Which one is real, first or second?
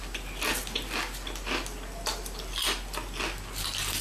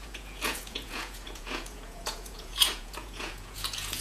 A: first